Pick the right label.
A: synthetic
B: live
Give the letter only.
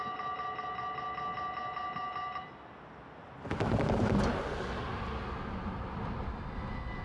B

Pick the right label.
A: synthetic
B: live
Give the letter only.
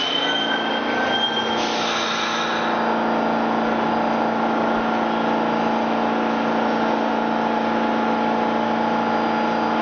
B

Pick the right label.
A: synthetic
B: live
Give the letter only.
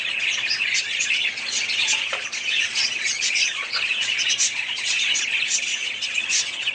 A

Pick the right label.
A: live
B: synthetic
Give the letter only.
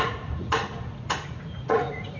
B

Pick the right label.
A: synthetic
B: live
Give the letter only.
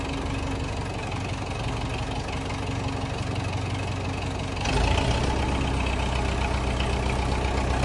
B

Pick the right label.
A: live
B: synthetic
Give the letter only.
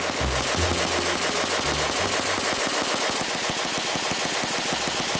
A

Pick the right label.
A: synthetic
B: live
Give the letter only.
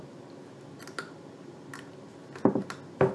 B